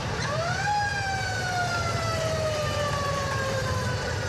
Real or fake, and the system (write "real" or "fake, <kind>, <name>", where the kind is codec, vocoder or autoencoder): fake, vocoder, BigVGAN v2